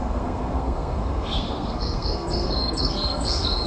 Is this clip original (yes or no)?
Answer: no